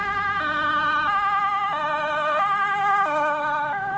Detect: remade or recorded recorded